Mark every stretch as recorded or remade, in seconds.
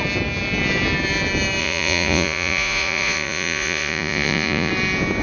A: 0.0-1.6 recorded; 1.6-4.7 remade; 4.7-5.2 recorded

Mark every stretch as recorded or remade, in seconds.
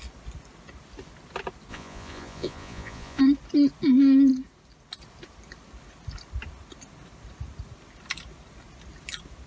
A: 0.0-1.7 recorded; 1.7-3.2 remade; 3.2-9.5 recorded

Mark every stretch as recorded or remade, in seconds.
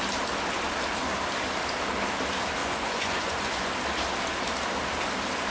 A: 0.0-2.6 recorded; 2.6-3.7 remade; 3.7-5.5 recorded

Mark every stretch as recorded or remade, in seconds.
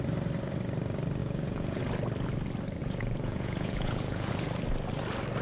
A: 0.0-1.2 recorded; 1.2-1.8 remade; 1.8-2.8 recorded; 2.8-4.3 remade; 4.3-5.4 recorded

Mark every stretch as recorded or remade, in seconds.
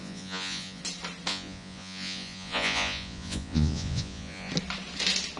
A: 0.0-0.8 remade; 0.8-1.3 recorded; 1.3-4.5 remade; 4.5-5.4 recorded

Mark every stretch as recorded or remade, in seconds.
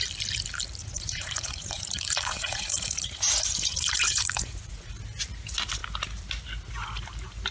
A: 0.0-0.8 recorded; 0.8-4.9 remade; 4.9-7.5 recorded